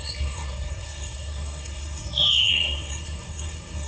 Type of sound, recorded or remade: remade